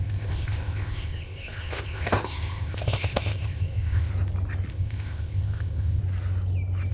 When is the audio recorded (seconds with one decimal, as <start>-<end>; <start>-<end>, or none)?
4.1-4.7; 6.0-6.9